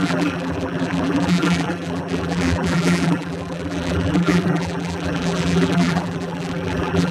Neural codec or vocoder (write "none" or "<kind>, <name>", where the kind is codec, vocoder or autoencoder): vocoder, BigVGAN v2